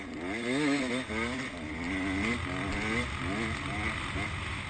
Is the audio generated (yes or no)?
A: no